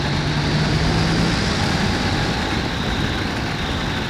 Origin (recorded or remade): recorded